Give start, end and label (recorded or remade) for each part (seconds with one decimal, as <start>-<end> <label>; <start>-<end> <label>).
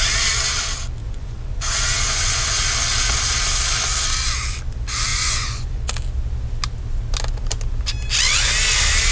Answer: 0.0-1.0 recorded; 1.0-2.6 remade; 2.6-5.1 recorded; 5.1-5.9 remade; 5.9-9.1 recorded